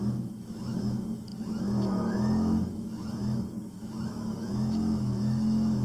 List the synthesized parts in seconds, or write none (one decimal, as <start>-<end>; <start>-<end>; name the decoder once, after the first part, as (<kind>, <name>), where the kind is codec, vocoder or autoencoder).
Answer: 0.0-5.8 (autoencoder, DAC-VAE)